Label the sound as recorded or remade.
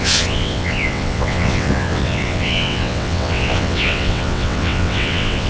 remade